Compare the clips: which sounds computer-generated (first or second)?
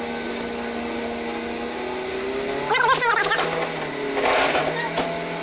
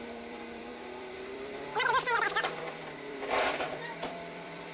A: second